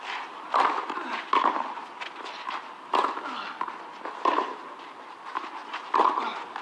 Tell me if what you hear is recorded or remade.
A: recorded